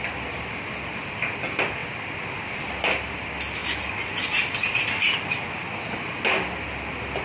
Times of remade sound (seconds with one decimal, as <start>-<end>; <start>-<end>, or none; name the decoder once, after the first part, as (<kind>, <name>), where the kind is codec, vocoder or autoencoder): none